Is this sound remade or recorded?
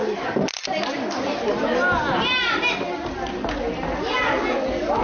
recorded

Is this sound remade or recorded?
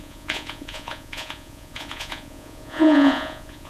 remade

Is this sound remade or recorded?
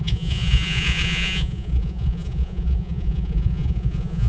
remade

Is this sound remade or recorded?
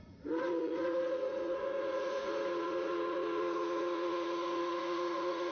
remade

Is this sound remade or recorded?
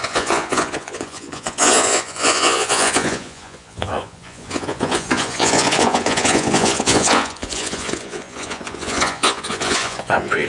remade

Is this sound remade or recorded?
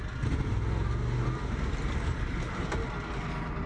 recorded